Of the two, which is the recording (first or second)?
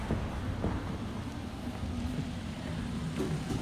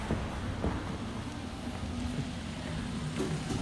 second